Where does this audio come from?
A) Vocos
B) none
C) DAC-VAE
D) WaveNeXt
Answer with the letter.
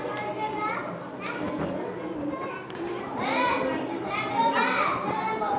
B